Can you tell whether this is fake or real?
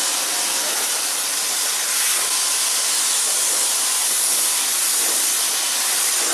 real